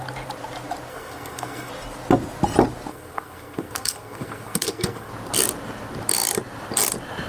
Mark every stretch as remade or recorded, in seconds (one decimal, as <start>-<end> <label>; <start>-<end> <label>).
0.0-0.9 recorded; 0.9-1.7 remade; 1.7-2.9 recorded; 2.9-5.1 remade; 5.1-7.3 recorded